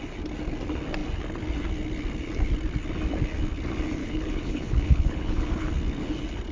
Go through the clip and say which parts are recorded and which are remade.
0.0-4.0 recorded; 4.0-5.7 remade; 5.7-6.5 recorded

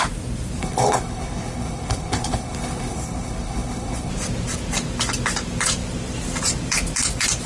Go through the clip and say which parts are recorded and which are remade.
0.0-0.6 recorded; 0.6-4.1 remade; 4.1-7.5 recorded

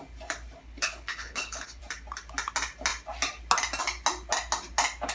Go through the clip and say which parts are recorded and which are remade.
0.0-0.6 recorded; 0.6-1.8 remade; 1.8-5.1 recorded

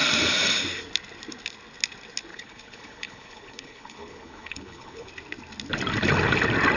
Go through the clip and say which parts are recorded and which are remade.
0.0-2.3 recorded; 2.3-5.1 remade; 5.1-6.8 recorded

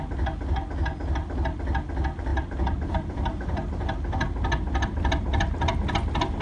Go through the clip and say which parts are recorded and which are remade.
0.0-6.4 recorded

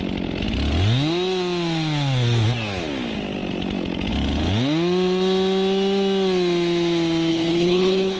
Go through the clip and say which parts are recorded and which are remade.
0.0-7.3 recorded; 7.3-8.2 remade

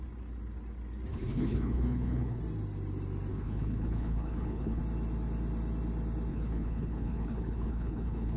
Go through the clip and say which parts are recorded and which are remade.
0.0-1.1 recorded; 1.1-2.4 remade; 2.4-3.3 recorded; 3.3-4.8 remade; 4.8-6.3 recorded; 6.3-8.4 remade